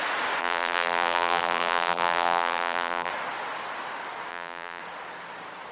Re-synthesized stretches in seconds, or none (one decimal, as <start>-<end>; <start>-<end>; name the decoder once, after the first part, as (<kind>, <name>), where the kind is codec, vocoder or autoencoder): 0.4-3.1 (vocoder, BigVGAN v2); 4.3-4.8